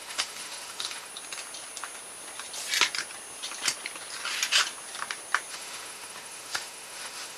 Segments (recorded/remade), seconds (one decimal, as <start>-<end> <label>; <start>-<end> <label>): 0.0-1.1 remade; 1.1-5.5 recorded; 5.5-7.4 remade